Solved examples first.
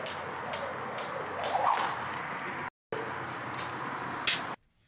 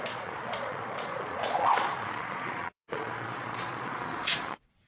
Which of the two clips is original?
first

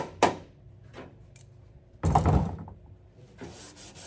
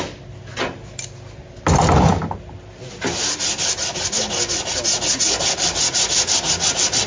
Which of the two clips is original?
second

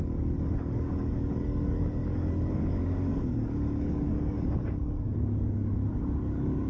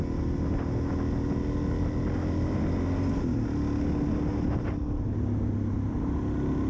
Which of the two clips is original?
second